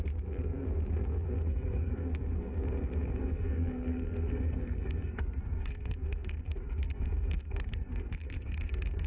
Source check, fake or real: fake